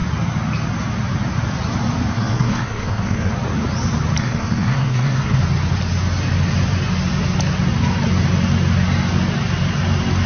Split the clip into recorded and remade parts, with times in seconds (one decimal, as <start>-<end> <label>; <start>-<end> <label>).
0.0-2.1 recorded; 2.1-3.3 remade; 3.3-4.2 recorded; 4.2-5.4 remade; 5.4-10.3 recorded